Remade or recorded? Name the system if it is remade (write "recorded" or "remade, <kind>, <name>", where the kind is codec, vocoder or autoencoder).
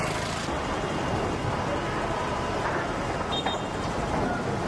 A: recorded